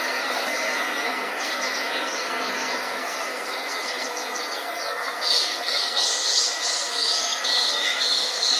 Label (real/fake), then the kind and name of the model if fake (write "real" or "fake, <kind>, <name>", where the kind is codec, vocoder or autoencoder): fake, codec, SNAC